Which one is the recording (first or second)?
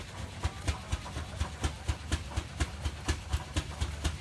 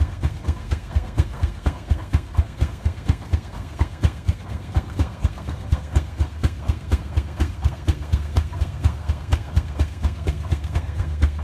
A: first